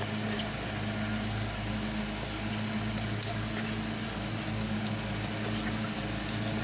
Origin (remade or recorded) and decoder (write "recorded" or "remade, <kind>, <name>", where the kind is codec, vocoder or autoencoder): recorded